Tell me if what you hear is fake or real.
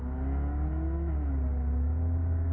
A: real